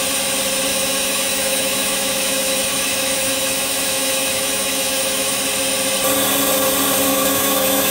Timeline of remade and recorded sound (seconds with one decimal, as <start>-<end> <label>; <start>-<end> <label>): 0.0-0.7 recorded; 0.7-5.4 remade; 5.4-7.1 recorded; 7.1-7.9 remade